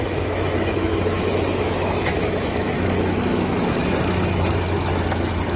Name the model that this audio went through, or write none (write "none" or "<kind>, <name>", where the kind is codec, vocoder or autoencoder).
autoencoder, DAC-VAE